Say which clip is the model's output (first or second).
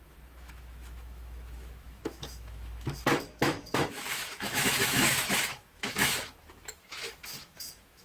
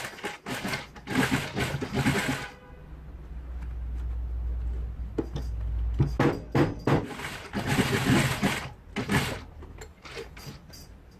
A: first